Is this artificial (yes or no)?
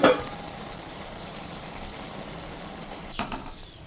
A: yes